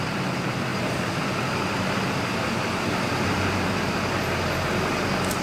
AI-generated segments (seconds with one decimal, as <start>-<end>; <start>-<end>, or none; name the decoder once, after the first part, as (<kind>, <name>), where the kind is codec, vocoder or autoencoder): 0.7-3.9 (vocoder, BigVGAN v2)